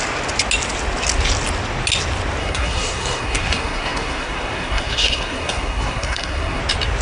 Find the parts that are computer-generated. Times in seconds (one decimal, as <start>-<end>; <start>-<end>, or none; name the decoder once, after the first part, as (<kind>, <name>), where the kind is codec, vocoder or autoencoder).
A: 2.4-6.6 (codec, SNAC)